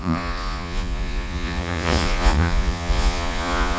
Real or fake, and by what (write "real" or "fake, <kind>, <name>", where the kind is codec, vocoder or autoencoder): fake, vocoder, Vocos